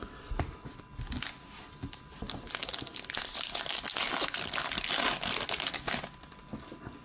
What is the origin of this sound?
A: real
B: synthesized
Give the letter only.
A